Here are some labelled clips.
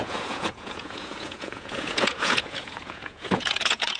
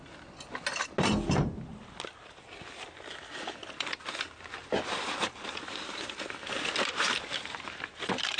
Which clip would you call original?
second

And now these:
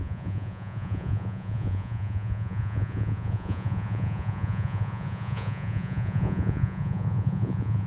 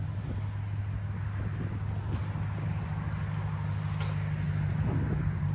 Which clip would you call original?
second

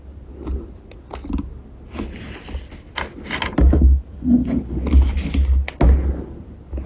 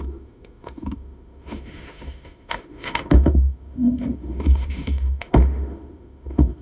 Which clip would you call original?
first